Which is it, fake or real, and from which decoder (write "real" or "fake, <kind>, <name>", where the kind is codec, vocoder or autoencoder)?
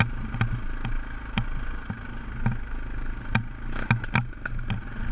real